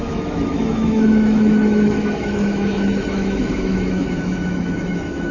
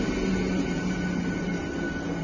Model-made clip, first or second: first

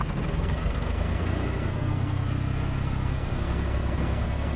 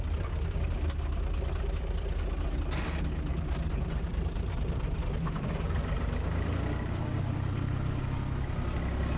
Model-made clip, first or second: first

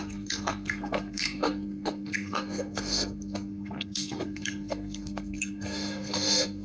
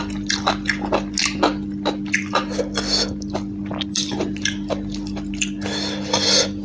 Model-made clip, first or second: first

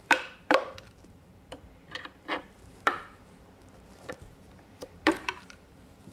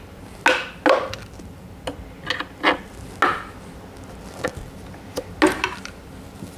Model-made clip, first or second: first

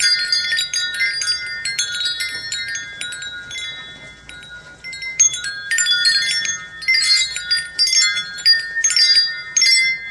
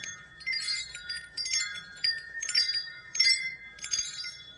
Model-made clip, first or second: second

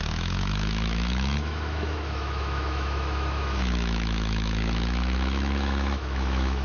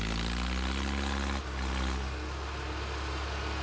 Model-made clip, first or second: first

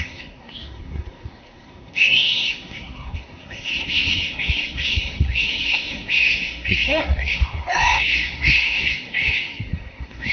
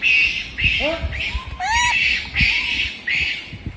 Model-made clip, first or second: first